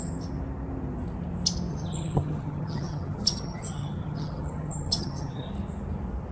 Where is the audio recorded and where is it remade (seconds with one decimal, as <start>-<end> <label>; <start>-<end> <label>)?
0.0-1.7 recorded; 1.7-5.5 remade; 5.5-6.3 recorded